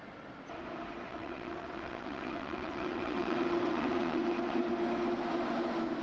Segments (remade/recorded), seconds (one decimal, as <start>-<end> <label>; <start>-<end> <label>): 0.0-1.1 recorded; 1.1-4.7 remade; 4.7-6.0 recorded